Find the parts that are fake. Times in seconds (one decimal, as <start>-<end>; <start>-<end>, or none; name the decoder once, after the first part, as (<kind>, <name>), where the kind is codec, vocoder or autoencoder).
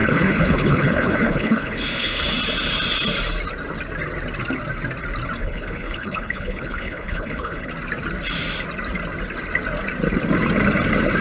0.0-2.2 (codec, HILCodec); 5.4-7.7